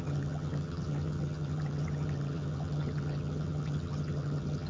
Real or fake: fake